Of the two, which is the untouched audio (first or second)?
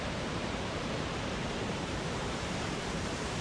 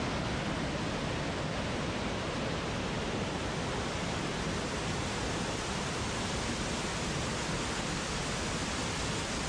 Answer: second